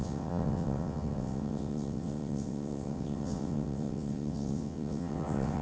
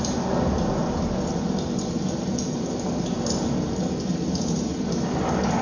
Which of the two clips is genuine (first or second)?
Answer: second